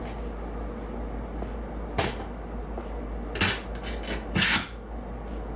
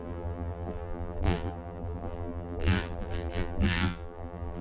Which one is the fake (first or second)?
second